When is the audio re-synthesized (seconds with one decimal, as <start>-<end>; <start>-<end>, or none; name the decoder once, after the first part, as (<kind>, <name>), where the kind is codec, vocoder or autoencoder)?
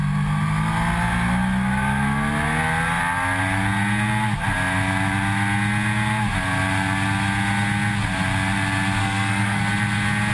9.0-9.6 (codec, SNAC)